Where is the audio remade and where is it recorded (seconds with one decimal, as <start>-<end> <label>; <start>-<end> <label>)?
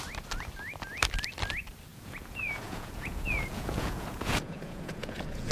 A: 0.0-1.9 recorded; 1.9-5.5 remade